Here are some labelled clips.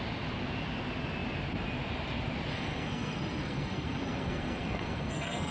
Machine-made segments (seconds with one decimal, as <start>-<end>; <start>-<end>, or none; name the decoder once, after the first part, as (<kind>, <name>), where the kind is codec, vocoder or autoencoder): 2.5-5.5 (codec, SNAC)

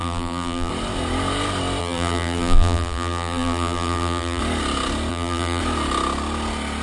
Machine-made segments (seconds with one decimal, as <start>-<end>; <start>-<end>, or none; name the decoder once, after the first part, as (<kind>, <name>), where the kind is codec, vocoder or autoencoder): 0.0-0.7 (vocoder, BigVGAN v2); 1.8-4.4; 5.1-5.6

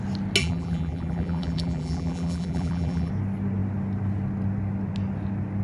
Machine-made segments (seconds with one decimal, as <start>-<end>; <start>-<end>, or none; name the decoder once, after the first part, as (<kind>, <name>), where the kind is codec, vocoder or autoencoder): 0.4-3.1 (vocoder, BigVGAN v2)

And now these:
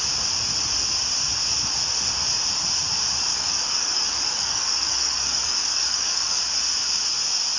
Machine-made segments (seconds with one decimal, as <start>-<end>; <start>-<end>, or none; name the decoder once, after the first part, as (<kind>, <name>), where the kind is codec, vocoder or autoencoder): 3.3-6.4 (codec, DAC)

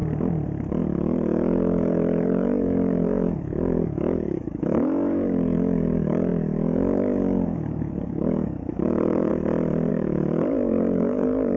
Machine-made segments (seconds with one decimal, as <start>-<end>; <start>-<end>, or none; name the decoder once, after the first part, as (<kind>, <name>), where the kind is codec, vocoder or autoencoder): 0.7-9.3 (codec, DAC); 9.9-11.6

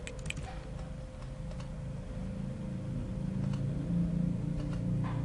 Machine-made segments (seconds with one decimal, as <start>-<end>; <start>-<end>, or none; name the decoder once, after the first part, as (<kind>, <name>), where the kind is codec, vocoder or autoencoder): none

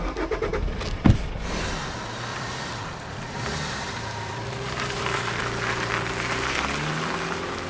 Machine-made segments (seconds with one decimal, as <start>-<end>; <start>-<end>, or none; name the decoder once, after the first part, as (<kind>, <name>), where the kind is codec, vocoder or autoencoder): 2.3-5.4 (vocoder, BigVGAN v2)